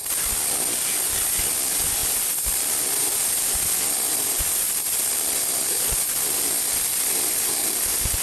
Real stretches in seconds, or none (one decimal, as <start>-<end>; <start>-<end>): 0.0-8.2